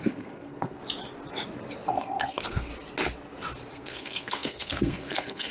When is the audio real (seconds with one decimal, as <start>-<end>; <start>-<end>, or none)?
0.8-1.9; 2.7-3.7